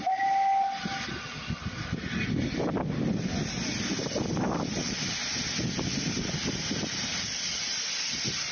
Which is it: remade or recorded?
recorded